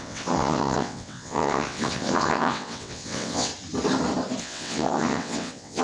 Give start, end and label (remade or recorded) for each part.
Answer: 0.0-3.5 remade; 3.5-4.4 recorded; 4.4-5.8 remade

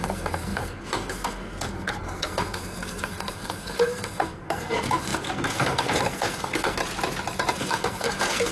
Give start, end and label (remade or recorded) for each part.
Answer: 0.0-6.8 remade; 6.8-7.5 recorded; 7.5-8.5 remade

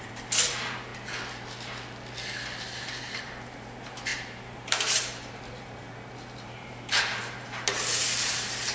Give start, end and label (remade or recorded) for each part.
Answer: 0.0-0.9 remade; 0.9-2.6 recorded; 2.6-8.7 remade

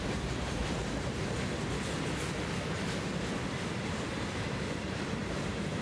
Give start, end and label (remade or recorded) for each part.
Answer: 0.0-0.6 remade; 0.6-3.8 recorded; 3.8-5.8 remade

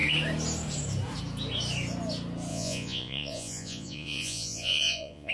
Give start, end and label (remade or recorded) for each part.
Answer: 0.0-2.5 recorded; 2.5-5.3 remade

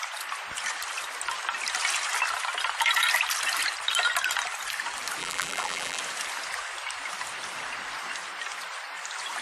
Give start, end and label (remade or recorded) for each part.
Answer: 0.0-5.2 recorded; 5.2-6.0 remade; 6.0-9.4 recorded